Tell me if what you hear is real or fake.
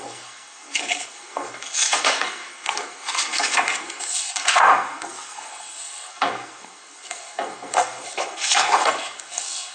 fake